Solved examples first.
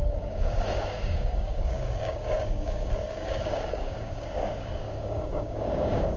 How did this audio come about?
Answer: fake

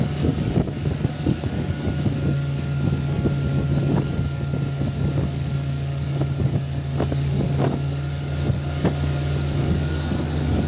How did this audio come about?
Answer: fake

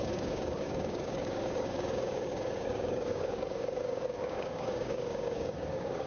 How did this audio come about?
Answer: fake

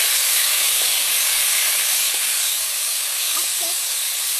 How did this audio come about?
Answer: fake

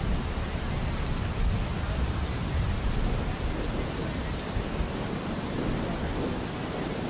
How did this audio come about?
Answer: real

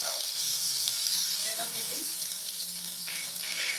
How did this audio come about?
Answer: fake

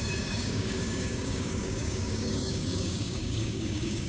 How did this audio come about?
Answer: fake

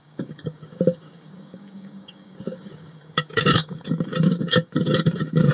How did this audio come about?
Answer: fake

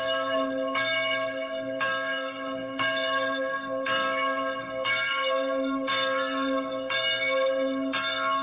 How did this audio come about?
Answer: fake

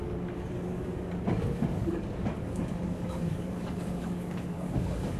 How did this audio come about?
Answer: fake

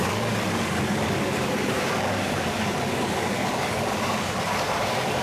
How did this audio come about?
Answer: fake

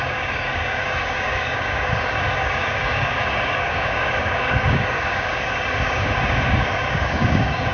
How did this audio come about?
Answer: fake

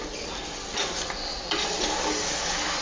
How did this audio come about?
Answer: real